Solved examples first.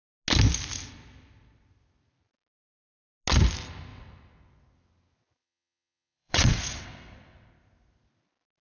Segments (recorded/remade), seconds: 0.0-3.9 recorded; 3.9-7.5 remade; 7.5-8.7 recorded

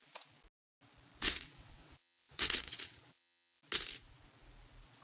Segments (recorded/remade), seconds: 0.0-1.2 recorded; 1.2-3.6 remade; 3.6-5.0 recorded